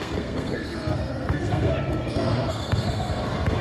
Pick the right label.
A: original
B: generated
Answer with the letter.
B